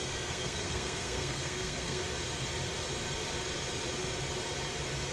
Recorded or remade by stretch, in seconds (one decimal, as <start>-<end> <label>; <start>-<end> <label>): 0.0-2.0 remade; 2.0-5.1 recorded